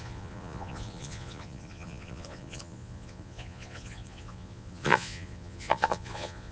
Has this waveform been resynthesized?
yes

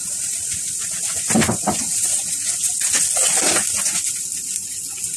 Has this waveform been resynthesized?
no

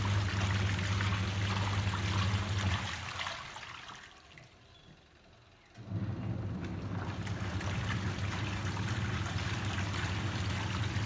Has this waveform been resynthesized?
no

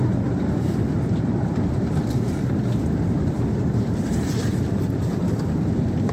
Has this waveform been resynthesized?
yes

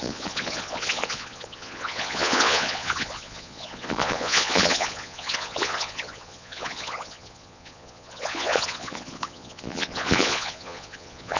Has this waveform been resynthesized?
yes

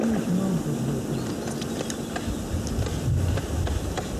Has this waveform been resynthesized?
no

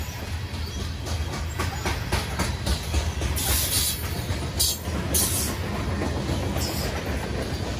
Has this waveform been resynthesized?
no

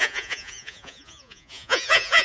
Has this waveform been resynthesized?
yes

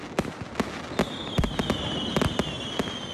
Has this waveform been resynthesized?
no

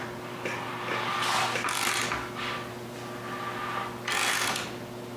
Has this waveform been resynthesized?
no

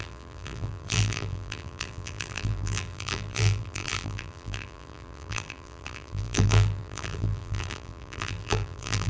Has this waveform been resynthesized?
yes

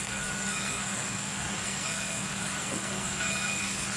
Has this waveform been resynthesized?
yes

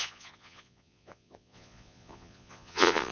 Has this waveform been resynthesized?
yes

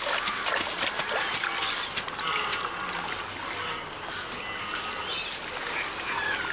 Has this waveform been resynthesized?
no